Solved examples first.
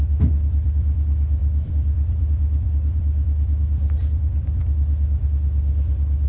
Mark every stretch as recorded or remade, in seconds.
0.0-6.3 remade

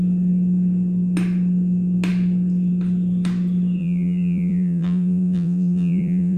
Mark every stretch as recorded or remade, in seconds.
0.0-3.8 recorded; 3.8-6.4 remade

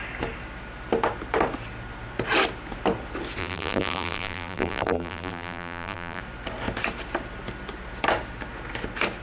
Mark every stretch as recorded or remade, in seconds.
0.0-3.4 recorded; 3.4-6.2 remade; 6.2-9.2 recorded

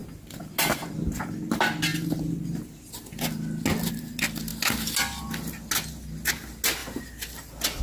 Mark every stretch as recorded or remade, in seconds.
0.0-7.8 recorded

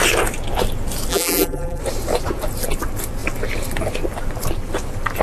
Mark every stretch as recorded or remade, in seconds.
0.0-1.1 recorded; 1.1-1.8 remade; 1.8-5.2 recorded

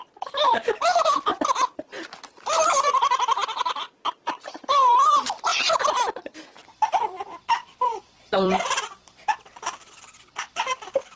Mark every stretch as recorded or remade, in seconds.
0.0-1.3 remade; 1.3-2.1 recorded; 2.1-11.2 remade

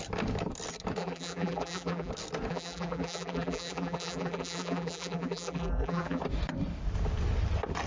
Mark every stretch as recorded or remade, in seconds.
0.0-1.0 recorded; 1.0-2.1 remade; 2.1-2.5 recorded; 2.5-6.2 remade; 6.2-7.9 recorded

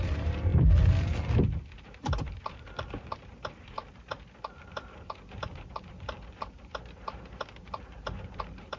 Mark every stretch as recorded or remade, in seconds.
0.0-0.5 remade; 0.5-1.8 recorded; 1.8-4.1 remade; 4.1-4.6 recorded; 4.6-8.8 remade